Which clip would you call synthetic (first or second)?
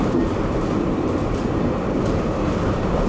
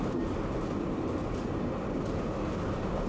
first